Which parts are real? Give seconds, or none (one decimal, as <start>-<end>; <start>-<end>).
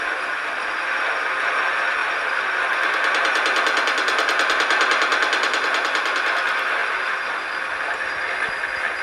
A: 0.0-2.0; 2.6-9.0